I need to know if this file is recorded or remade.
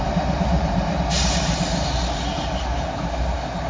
remade